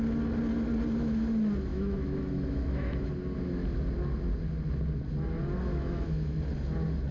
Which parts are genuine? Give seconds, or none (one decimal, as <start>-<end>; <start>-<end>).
0.0-1.7; 3.1-5.7; 6.4-7.1